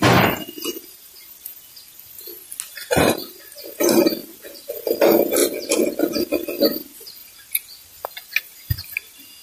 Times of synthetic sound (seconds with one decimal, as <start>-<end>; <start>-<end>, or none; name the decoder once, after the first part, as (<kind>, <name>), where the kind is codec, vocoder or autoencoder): 4.2-5.0 (vocoder, BigVGAN v2)